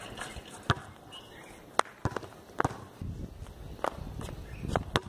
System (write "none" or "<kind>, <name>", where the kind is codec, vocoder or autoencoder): none